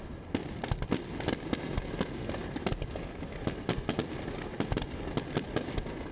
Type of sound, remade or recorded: recorded